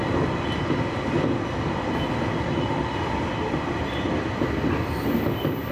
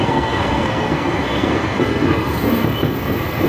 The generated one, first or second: second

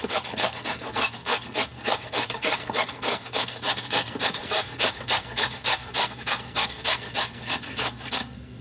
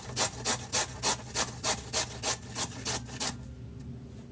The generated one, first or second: first